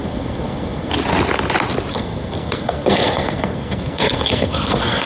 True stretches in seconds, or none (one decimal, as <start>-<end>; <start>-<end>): 0.9-1.9